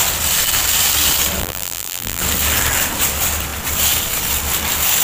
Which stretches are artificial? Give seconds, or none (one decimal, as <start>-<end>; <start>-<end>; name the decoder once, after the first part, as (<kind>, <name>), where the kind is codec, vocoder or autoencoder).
1.4-2.2 (vocoder, BigVGAN v2)